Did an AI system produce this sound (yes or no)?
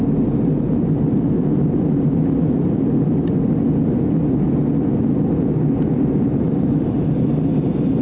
no